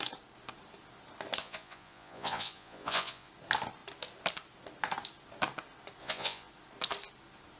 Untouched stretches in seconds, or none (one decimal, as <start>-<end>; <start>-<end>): 0.0-1.4; 3.3-6.0; 6.5-7.6